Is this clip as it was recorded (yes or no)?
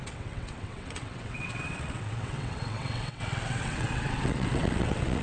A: no